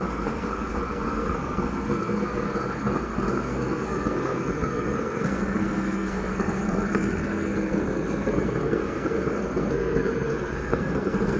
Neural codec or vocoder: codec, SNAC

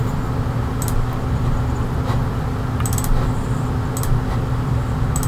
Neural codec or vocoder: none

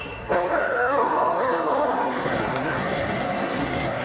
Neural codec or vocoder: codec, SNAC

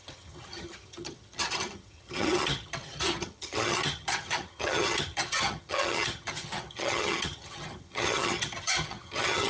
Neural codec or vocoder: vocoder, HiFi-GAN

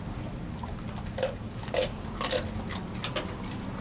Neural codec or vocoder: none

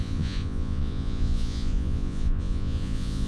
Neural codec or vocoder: vocoder, Vocos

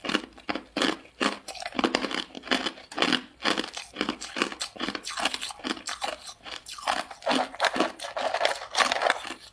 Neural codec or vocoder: none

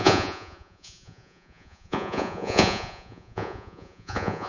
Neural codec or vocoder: vocoder, Vocos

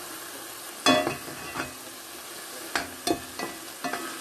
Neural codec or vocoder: none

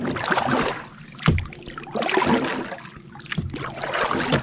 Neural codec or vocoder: none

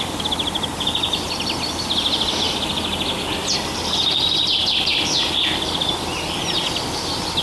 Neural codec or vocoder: none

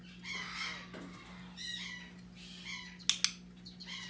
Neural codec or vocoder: none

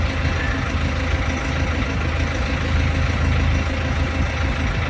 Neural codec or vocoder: none